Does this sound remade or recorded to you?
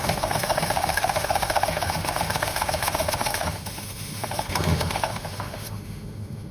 remade